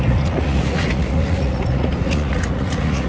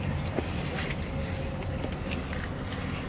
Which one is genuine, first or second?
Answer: second